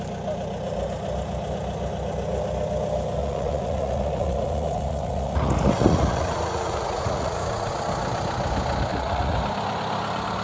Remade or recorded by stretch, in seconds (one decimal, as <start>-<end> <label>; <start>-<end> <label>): 0.0-3.2 recorded; 3.2-7.7 remade; 7.7-8.9 recorded; 8.9-9.4 remade; 9.4-10.4 recorded